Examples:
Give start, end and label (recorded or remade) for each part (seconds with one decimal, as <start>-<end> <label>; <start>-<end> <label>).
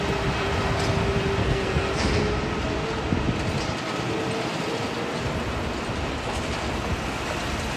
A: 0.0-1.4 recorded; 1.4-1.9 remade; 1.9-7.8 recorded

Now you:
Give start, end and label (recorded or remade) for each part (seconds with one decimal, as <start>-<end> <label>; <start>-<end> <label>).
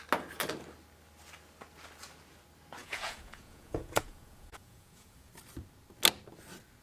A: 0.0-2.8 recorded; 2.8-5.3 remade; 5.3-6.8 recorded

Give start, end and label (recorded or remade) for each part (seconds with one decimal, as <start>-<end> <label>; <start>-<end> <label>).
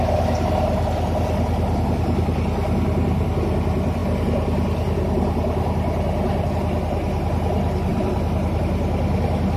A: 0.0-7.9 recorded; 7.9-8.6 remade; 8.6-9.6 recorded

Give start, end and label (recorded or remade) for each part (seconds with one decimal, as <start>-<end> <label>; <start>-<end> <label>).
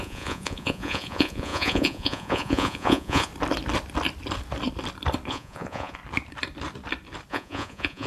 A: 0.0-3.3 remade; 3.3-5.3 recorded; 5.3-6.0 remade; 6.0-7.3 recorded; 7.3-8.1 remade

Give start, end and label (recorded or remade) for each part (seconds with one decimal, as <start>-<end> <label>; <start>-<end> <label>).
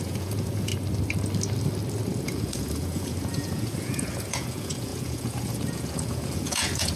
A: 0.0-0.7 remade; 0.7-2.2 recorded; 2.2-7.0 remade